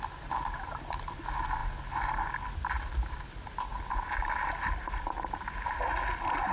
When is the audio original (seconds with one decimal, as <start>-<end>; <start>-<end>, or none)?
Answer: 0.0-6.5